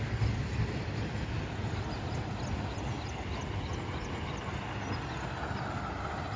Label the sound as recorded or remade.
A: recorded